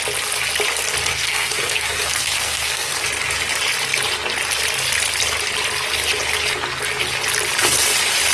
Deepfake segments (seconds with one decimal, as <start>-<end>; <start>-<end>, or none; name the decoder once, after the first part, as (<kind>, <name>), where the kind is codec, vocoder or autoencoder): 1.1-3.0 (codec, SNAC)